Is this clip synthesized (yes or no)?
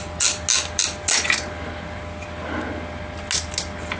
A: no